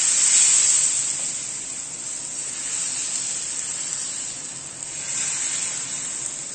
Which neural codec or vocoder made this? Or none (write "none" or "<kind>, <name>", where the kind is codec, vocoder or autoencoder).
none